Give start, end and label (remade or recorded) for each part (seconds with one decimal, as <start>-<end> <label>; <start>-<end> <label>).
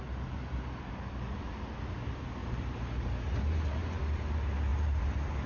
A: 0.0-2.4 recorded; 2.4-4.0 remade; 4.0-4.7 recorded; 4.7-5.5 remade